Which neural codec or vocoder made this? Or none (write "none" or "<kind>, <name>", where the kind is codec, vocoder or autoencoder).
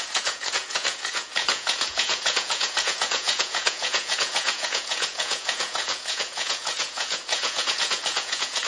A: vocoder, Vocos